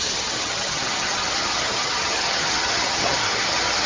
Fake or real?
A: fake